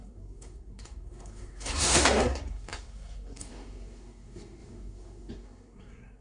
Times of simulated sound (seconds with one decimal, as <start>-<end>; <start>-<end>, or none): 0.0-6.2